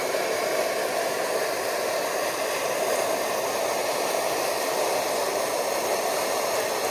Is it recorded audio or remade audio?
recorded